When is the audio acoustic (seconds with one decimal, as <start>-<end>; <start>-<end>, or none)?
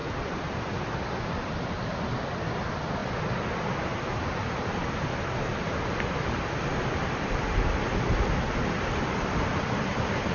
0.0-10.3